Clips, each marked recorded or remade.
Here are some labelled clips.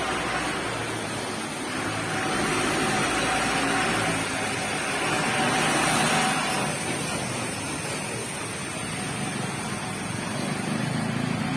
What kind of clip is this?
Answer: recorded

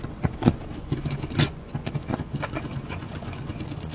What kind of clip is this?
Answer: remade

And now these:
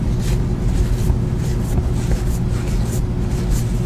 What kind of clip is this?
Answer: recorded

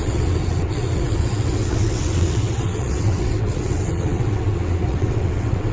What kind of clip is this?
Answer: remade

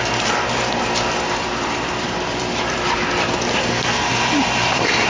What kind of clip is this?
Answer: remade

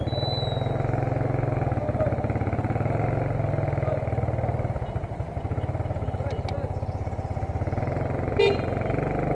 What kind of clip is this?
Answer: recorded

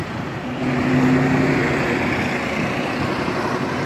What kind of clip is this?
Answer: recorded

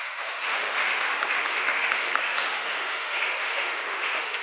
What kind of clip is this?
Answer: remade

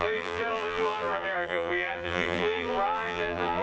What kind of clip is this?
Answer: remade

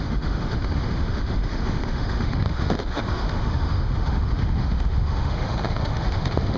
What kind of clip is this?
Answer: remade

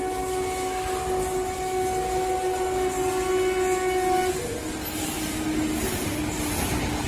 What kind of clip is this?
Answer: recorded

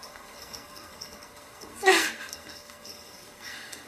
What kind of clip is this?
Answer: remade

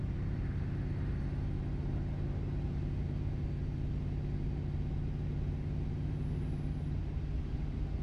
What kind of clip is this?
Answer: recorded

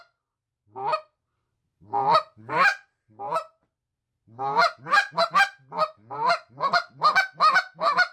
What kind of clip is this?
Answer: recorded